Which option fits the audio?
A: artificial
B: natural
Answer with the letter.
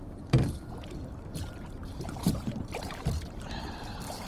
A